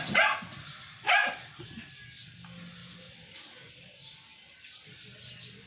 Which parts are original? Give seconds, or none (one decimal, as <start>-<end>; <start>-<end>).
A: 0.0-1.2; 2.0-2.8; 3.7-4.3; 5.0-5.7